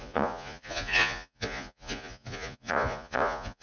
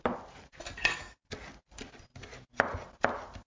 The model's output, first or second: first